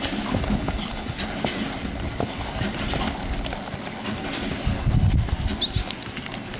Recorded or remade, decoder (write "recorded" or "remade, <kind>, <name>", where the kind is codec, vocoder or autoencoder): recorded